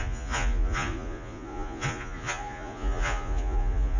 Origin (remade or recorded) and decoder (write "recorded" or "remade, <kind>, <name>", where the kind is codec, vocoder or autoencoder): remade, vocoder, Vocos